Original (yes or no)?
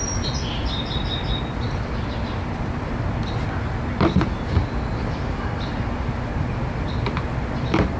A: yes